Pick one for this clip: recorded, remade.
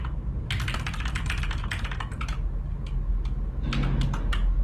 recorded